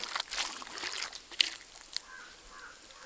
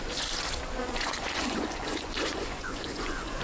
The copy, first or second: second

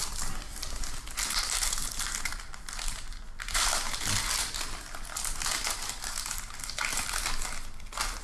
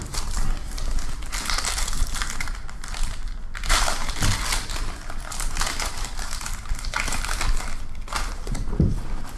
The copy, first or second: second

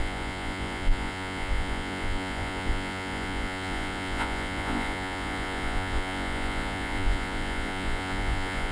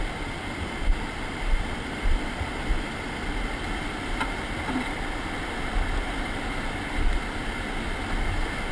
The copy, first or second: first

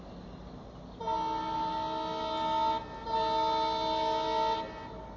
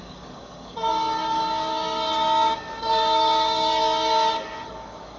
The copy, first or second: second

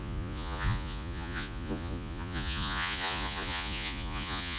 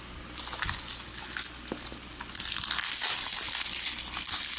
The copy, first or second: first